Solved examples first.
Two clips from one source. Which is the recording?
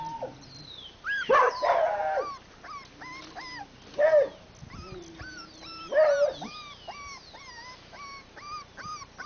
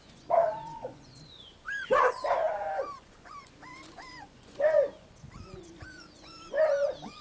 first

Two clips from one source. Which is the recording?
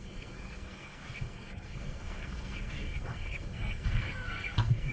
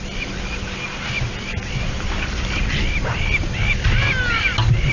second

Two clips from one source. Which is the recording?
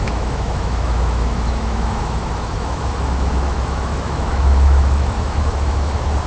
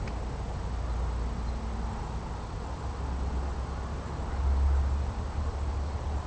second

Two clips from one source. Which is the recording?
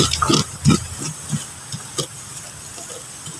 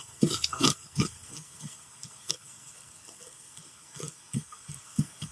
first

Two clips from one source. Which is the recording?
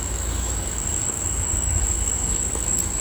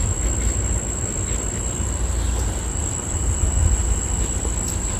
second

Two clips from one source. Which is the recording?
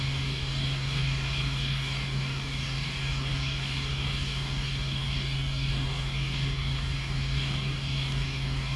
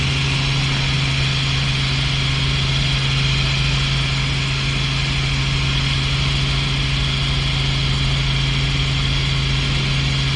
second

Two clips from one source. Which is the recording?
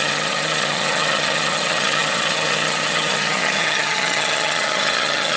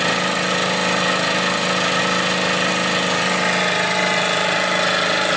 second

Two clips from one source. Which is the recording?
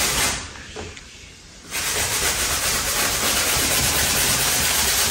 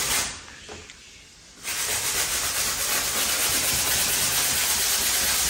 second